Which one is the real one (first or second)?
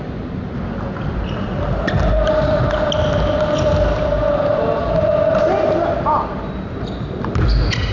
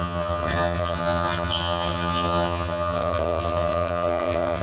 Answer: first